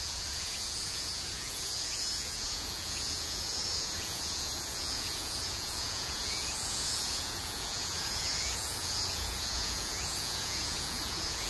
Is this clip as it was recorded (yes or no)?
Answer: no